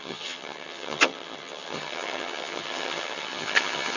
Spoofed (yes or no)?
yes